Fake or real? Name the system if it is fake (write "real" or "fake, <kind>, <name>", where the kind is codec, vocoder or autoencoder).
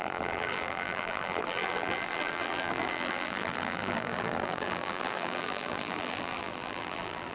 fake, vocoder, BigVGAN v2